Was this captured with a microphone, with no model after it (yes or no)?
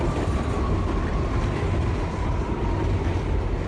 yes